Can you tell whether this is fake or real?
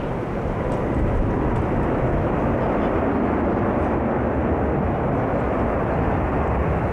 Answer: real